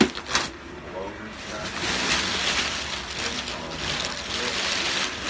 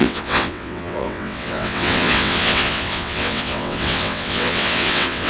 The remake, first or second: second